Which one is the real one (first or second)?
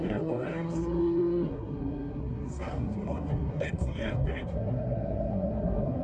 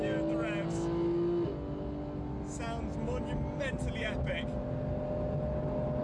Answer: second